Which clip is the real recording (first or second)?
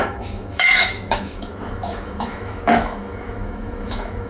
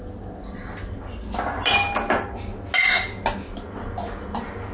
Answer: second